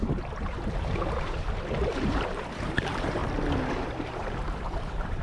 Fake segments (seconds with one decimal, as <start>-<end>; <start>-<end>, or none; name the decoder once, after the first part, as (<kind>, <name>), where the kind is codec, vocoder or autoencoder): 0.0-3.2 (vocoder, BigVGAN v2); 3.8-5.2